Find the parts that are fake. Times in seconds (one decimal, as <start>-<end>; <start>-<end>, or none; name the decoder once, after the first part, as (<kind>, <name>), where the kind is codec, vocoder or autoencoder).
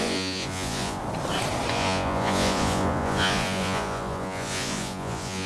0.0-1.0 (vocoder, Vocos); 1.7-5.5